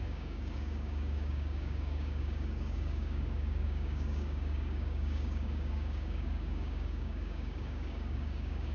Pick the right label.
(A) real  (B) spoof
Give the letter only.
B